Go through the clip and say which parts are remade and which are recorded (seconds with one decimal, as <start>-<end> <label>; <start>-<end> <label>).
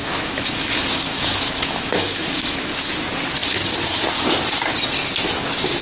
0.0-2.7 remade; 2.7-5.8 recorded